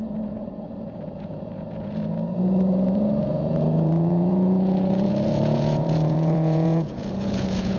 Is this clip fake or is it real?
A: fake